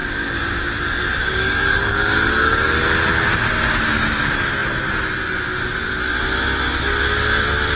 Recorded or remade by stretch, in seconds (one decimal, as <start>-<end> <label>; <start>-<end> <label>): 0.0-0.6 remade; 0.6-1.2 recorded; 1.2-2.8 remade; 2.8-7.8 recorded